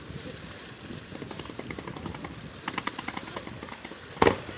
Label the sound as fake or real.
fake